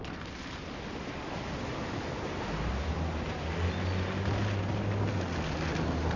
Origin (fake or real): real